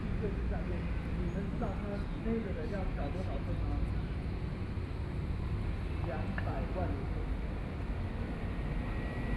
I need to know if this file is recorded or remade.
recorded